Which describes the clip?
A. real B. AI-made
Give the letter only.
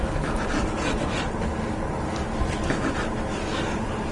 A